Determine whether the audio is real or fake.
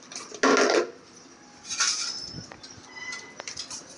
real